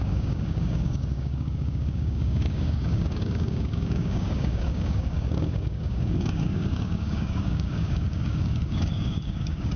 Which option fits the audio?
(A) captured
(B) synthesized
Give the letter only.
B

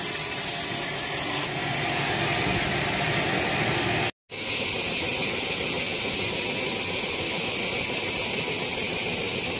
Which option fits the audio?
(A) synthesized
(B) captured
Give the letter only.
B